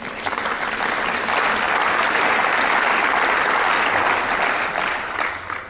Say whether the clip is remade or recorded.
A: recorded